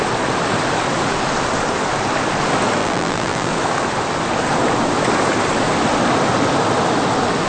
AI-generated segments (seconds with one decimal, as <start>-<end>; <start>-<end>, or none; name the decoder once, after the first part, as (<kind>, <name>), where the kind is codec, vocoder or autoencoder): 2.8-3.5 (vocoder, BigVGAN v2)